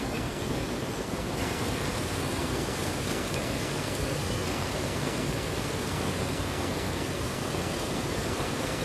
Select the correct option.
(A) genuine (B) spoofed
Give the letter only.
B